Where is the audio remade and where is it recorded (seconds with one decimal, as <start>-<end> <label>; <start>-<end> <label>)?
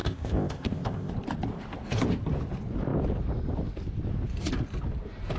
0.0-1.1 remade; 1.1-5.4 recorded